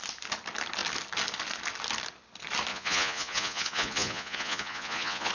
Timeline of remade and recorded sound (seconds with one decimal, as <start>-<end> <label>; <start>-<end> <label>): 0.0-2.7 recorded; 2.7-5.3 remade